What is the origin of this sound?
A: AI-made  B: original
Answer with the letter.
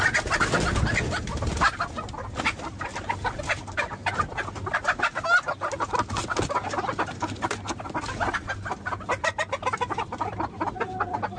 B